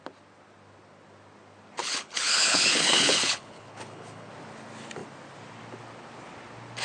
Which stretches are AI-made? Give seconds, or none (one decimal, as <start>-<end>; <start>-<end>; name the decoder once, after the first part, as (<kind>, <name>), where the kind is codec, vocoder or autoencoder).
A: 1.8-4.3 (codec, HILCodec)